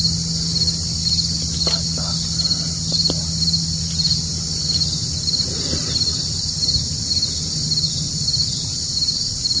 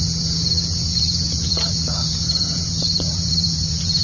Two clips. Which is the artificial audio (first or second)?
second